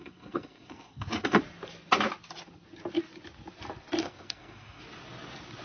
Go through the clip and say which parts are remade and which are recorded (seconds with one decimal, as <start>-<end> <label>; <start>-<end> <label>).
0.0-1.4 remade; 1.4-4.0 recorded; 4.0-4.8 remade; 4.8-5.6 recorded